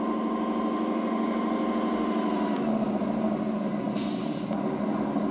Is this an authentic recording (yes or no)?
yes